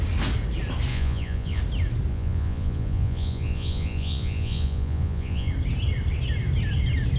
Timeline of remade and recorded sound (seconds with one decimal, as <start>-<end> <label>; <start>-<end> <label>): 0.0-0.9 recorded; 0.9-1.6 remade; 1.6-2.1 recorded; 2.1-5.5 remade; 5.5-7.2 recorded

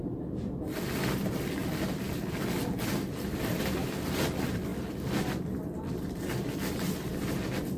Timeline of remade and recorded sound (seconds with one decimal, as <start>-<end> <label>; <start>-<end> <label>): 0.0-7.8 recorded

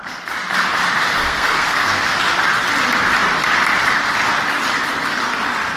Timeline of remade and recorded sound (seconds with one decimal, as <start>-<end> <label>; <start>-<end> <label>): 0.0-1.2 recorded; 1.2-2.2 remade; 2.2-5.8 recorded